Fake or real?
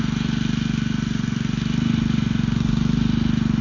real